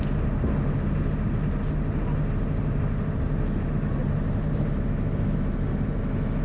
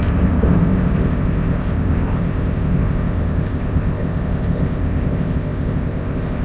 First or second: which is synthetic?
second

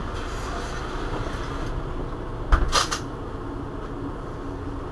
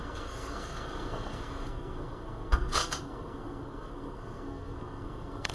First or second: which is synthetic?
second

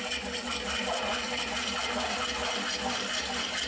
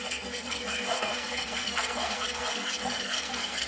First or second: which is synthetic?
second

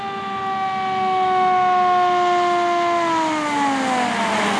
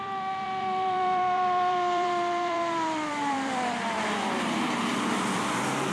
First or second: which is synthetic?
second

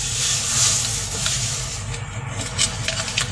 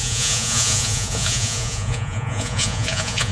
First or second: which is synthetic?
second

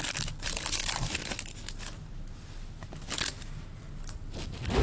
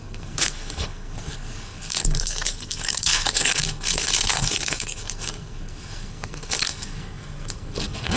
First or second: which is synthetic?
second